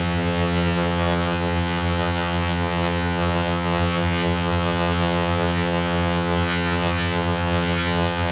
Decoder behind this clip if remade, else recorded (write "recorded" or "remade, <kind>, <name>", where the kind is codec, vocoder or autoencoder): remade, vocoder, HiFi-GAN